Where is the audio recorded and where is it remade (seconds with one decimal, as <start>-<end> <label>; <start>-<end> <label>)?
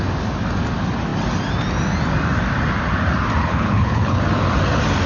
0.0-3.4 recorded; 3.4-4.2 remade; 4.2-5.1 recorded